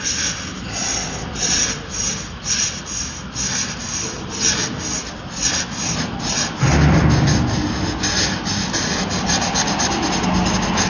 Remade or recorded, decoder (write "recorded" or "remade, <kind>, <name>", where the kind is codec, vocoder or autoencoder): recorded